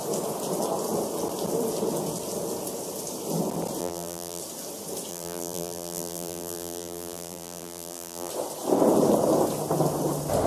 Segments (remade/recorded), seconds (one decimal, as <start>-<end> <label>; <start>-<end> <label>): 0.0-3.8 recorded; 3.8-4.4 remade; 4.4-5.1 recorded; 5.1-8.3 remade; 8.3-10.5 recorded